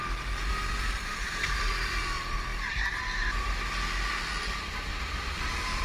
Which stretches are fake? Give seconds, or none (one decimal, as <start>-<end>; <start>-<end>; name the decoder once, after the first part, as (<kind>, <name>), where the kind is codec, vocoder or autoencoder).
0.5-1.7 (vocoder, BigVGAN v2); 4.9-5.8